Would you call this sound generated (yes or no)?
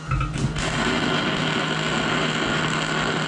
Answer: no